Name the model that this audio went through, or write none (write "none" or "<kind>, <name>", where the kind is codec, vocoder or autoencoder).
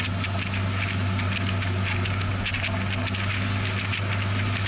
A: none